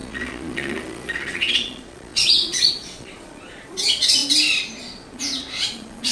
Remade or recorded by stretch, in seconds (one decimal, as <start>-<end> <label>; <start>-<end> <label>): 0.0-4.2 remade; 4.2-4.8 recorded; 4.8-6.1 remade